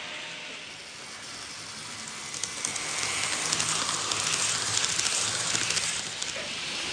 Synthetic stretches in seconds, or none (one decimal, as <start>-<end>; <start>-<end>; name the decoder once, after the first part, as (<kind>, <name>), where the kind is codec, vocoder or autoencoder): none